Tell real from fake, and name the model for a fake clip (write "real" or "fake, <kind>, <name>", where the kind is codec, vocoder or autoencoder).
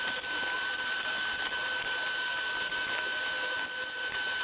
real